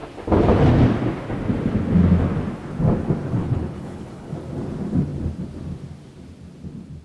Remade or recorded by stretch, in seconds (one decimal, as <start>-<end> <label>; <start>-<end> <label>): 0.0-3.4 recorded; 3.4-4.3 remade; 4.3-7.0 recorded